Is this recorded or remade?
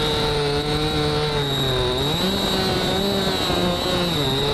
recorded